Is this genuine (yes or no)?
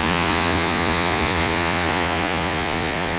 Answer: no